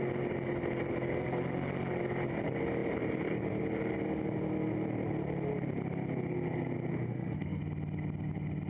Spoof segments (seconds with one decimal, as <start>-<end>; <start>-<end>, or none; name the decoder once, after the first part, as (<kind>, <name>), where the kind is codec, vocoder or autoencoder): 6.9-7.6 (autoencoder, DAC-VAE)